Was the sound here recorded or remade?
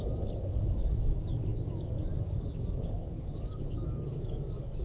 remade